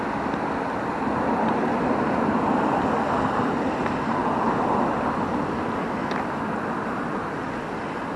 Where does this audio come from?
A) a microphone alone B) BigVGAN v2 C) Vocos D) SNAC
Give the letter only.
A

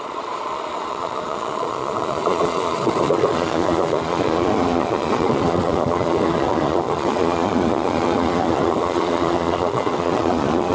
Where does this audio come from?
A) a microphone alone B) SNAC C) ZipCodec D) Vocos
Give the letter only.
D